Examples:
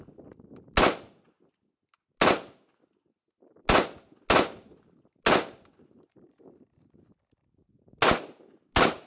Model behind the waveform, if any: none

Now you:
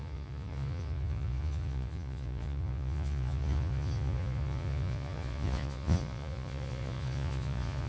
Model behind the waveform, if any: vocoder, Vocos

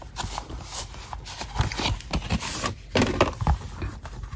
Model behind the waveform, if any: none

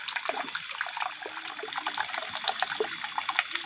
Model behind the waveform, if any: none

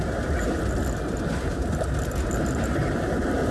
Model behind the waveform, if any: none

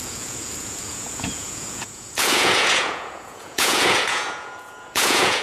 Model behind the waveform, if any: vocoder, Vocos